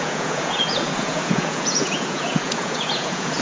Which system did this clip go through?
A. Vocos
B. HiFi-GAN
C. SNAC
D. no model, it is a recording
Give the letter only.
A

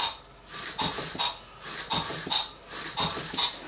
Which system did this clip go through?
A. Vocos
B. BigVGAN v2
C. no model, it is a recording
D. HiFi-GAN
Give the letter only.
C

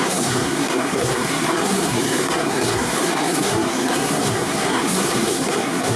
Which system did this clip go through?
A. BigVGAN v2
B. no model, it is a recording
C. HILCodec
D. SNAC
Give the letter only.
D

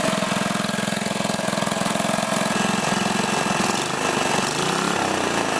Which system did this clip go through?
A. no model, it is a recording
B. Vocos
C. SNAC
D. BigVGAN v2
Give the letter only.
A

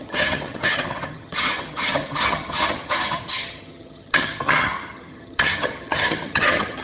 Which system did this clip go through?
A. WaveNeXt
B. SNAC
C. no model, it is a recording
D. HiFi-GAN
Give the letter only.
D